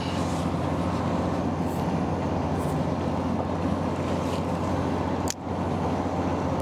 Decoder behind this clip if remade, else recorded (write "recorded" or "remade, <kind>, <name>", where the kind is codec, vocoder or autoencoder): recorded